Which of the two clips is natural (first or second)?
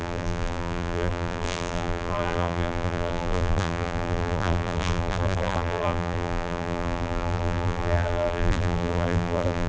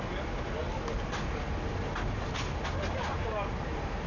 second